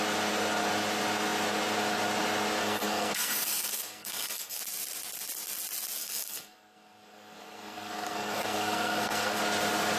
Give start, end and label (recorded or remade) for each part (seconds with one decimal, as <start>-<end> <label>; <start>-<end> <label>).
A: 0.0-2.6 recorded; 2.6-4.6 remade; 4.6-6.0 recorded; 6.0-9.4 remade; 9.4-10.0 recorded